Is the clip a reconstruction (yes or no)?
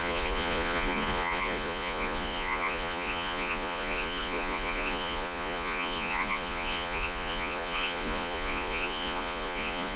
yes